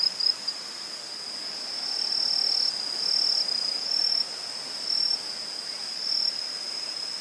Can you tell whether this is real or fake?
real